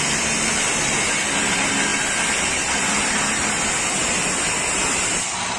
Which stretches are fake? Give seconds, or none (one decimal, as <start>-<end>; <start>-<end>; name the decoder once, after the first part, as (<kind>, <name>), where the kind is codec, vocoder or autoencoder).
none